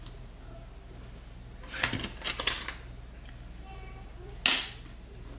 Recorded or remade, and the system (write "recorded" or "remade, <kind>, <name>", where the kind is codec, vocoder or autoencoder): recorded